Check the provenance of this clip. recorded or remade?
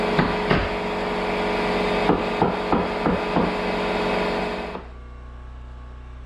recorded